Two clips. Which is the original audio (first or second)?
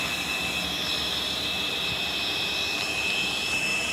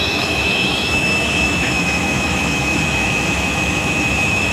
first